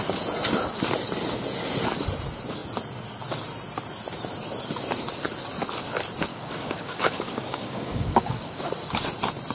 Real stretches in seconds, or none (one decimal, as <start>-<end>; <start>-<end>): 0.0-6.3; 8.6-9.5

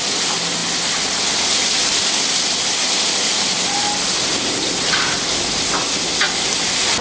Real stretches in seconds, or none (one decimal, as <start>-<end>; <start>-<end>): 0.0-7.0

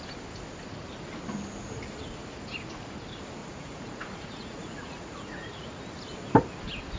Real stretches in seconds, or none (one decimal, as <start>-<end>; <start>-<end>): 0.0-3.4; 5.8-7.0

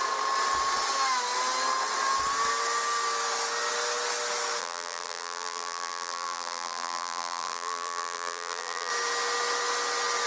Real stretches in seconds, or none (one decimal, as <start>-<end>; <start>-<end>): 0.0-4.6; 8.9-10.3

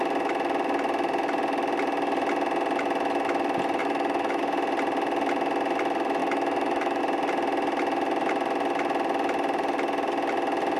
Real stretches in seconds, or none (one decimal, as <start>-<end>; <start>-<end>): 0.0-3.8; 4.4-6.2; 7.0-10.8